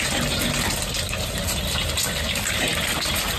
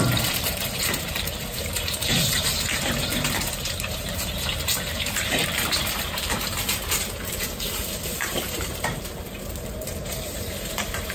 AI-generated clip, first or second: second